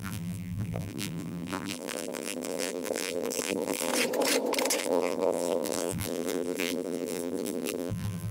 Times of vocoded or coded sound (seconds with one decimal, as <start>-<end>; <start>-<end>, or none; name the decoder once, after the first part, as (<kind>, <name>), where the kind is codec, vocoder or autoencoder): 0.0-3.9 (vocoder, BigVGAN v2); 4.8-8.3